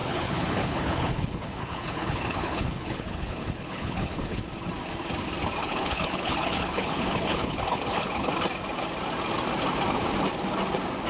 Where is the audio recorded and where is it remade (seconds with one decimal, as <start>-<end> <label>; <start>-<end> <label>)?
0.0-4.4 remade; 4.4-5.6 recorded; 5.6-8.3 remade; 8.3-11.1 recorded